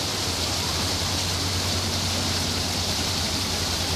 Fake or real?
fake